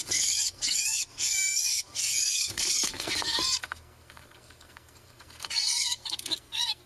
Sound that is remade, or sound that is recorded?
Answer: remade